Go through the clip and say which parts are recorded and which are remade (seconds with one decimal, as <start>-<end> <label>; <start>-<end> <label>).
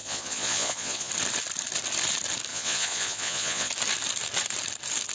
0.0-1.1 remade; 1.1-2.5 recorded; 2.5-3.7 remade; 3.7-5.1 recorded